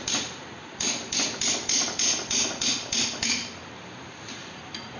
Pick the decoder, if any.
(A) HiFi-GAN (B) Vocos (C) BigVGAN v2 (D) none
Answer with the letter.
D